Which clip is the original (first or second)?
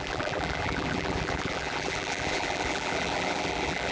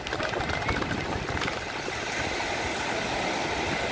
second